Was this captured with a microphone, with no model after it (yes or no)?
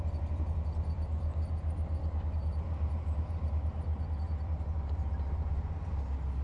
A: yes